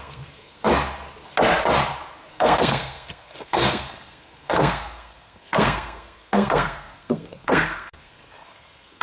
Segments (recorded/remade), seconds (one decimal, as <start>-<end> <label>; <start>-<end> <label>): 0.0-0.7 remade; 0.7-2.3 recorded; 2.3-9.0 remade